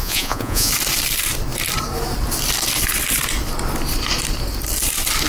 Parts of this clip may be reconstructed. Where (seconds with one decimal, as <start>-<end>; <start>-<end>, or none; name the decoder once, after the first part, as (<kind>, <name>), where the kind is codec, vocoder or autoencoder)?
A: 0.0-0.7 (vocoder, Vocos)